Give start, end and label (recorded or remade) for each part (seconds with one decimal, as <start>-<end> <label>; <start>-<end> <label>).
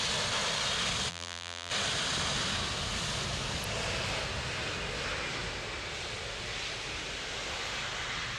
0.0-1.1 recorded; 1.1-1.7 remade; 1.7-8.4 recorded